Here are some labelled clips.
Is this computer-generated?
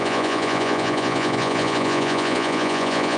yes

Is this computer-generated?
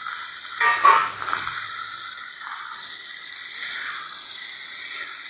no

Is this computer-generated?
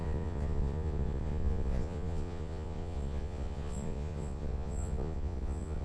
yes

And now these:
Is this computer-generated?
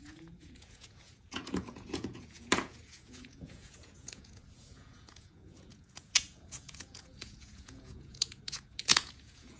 yes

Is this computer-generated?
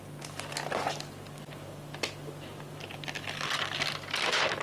no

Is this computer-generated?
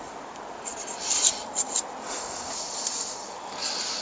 no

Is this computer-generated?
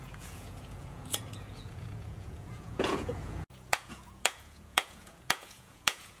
yes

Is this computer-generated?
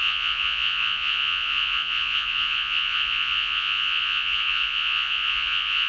yes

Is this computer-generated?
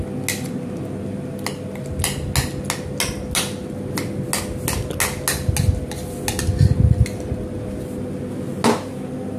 no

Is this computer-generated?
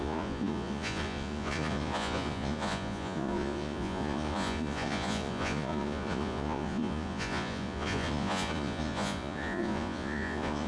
yes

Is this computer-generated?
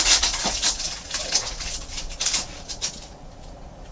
yes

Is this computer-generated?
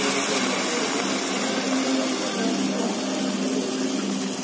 no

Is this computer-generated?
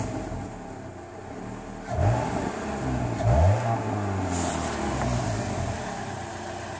no